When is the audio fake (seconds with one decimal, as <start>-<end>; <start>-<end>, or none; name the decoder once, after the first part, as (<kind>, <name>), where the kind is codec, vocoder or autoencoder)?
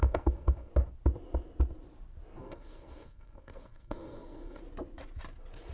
0.0-0.7 (codec, SNAC); 2.4-4.6